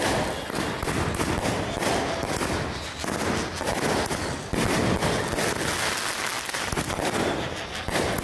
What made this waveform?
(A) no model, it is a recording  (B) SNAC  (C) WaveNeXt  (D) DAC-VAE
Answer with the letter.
A